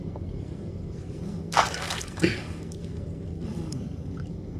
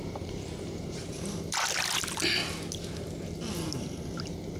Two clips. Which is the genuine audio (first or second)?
second